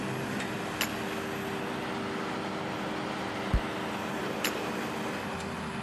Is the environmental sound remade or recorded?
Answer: recorded